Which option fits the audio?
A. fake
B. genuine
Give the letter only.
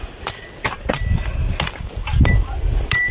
B